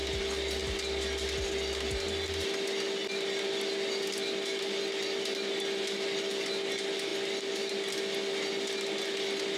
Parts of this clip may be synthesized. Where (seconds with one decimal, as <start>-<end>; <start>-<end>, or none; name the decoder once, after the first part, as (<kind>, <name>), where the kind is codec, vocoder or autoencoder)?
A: none